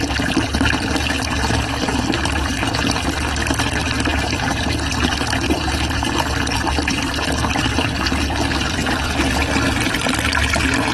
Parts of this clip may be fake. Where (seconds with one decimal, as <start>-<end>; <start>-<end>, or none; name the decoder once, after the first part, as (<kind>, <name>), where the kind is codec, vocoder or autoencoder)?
4.1-4.9 (vocoder, BigVGAN v2)